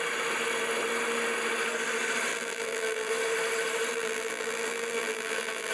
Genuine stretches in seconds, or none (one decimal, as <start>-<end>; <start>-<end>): 0.0-2.3; 3.1-3.9